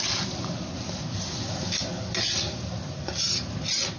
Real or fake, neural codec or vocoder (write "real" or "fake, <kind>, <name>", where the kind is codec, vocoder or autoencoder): real